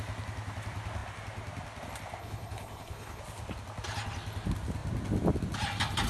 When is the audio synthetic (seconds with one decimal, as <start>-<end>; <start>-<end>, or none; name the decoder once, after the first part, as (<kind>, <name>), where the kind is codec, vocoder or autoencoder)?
2.2-3.2 (codec, HILCodec)